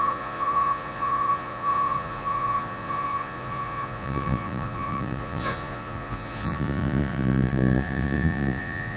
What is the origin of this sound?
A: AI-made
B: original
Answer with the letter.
A